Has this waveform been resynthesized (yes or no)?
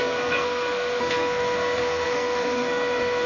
yes